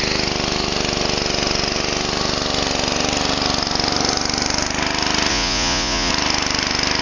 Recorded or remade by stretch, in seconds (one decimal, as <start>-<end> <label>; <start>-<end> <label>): 0.0-5.3 recorded; 5.3-6.1 remade; 6.1-7.0 recorded